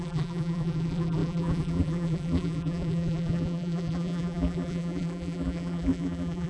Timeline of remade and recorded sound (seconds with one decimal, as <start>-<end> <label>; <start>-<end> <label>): 0.0-6.5 remade